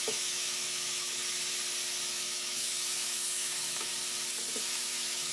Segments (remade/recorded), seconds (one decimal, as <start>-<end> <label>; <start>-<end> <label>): 0.0-1.2 remade; 1.2-2.1 recorded; 2.1-3.9 remade; 3.9-4.6 recorded; 4.6-5.3 remade